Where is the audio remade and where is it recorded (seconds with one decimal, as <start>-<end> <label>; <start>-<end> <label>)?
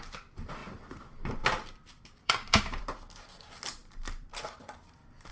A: 0.0-2.2 recorded; 2.2-2.8 remade; 2.8-5.3 recorded